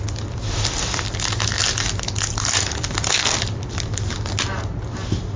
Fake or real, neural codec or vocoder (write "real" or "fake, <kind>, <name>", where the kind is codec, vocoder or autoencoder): real